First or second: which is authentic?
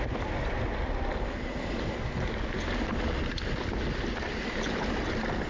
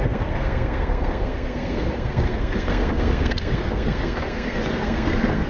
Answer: first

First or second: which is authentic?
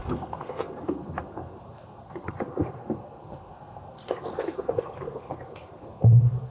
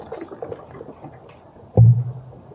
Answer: second